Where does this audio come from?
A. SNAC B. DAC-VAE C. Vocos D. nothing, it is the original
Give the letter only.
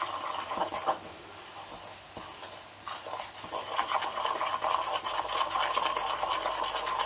D